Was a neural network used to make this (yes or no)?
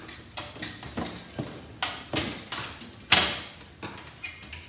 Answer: no